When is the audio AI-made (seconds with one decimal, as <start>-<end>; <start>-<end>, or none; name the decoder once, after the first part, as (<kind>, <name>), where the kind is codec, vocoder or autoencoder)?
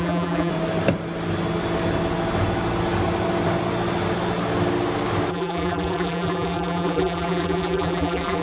0.0-0.5 (vocoder, BigVGAN v2); 5.3-8.4